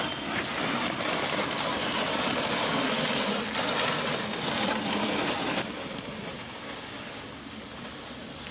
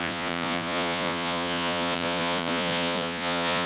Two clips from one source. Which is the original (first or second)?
first